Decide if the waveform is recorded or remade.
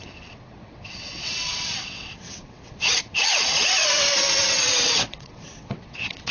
remade